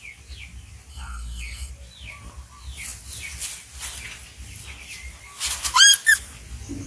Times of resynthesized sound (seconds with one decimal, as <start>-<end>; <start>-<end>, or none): 0.9-1.7